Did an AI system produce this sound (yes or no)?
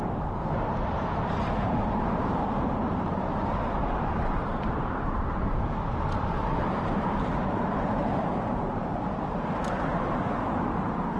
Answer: yes